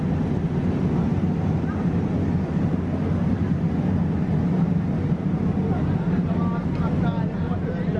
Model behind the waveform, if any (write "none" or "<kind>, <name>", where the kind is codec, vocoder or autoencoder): none